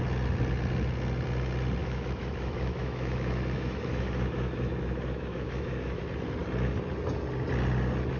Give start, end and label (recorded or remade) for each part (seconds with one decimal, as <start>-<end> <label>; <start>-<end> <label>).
0.0-1.8 recorded; 1.8-6.0 remade; 6.0-8.2 recorded

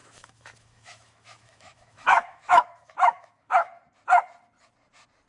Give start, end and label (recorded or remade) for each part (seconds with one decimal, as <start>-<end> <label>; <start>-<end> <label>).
0.0-3.8 remade; 3.8-5.3 recorded

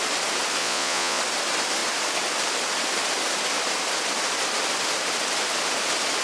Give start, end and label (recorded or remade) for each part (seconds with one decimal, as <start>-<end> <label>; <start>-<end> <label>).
0.0-0.6 recorded; 0.6-1.2 remade; 1.2-6.2 recorded

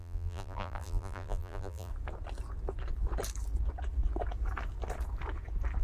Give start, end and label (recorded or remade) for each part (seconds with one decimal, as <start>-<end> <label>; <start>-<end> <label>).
0.0-1.9 remade; 1.9-5.8 recorded